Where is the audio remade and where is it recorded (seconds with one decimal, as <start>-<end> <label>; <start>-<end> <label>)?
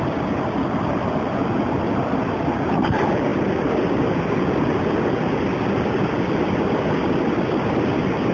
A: 0.0-8.3 recorded